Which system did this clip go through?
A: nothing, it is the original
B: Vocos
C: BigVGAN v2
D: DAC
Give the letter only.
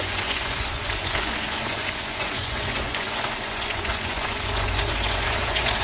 B